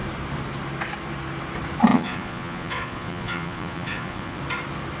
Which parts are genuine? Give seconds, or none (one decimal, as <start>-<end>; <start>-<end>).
0.0-1.9; 4.4-5.0

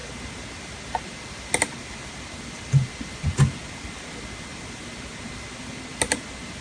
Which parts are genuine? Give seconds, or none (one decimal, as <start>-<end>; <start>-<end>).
0.0-6.6

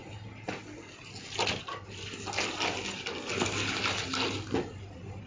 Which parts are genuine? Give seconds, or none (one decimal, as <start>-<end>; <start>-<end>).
0.0-5.3

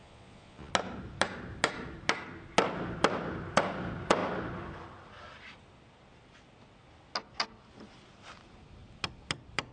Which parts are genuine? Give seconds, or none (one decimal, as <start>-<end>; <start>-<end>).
0.7-9.7

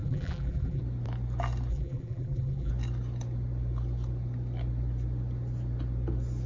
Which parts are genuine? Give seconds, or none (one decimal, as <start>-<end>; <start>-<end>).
0.8-1.7; 2.7-6.5

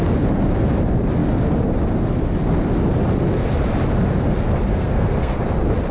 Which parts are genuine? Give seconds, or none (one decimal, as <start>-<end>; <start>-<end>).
0.0-4.7; 5.4-5.9

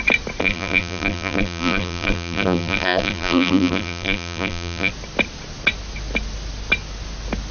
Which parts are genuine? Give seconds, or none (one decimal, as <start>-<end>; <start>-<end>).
0.0-0.4; 4.9-7.5